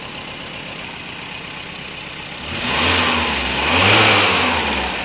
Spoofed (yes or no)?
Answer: no